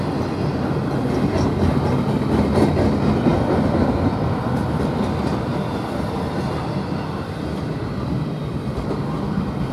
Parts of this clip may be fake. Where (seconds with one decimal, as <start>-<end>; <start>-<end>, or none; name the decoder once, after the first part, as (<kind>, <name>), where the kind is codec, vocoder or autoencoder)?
5.5-6.5 (vocoder, BigVGAN v2)